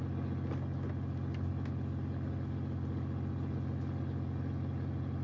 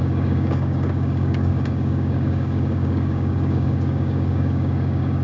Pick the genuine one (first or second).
first